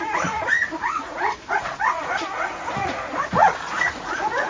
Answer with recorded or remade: remade